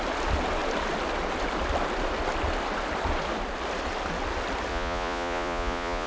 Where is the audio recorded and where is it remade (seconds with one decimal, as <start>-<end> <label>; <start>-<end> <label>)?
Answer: 0.0-4.7 recorded; 4.7-6.1 remade